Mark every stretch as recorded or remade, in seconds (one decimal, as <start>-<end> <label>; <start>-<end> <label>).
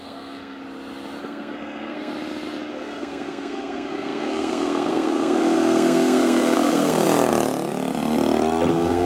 0.0-0.6 remade; 0.6-1.2 recorded; 1.2-2.1 remade; 2.1-2.7 recorded; 2.7-7.0 remade; 7.0-8.7 recorded; 8.7-9.1 remade